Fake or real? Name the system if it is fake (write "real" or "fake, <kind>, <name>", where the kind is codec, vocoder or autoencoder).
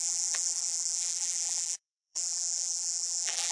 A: fake, vocoder, BigVGAN v2